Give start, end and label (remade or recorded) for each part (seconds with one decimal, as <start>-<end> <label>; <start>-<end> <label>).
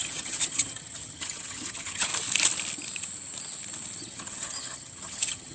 0.0-2.1 remade; 2.1-4.0 recorded; 4.0-5.5 remade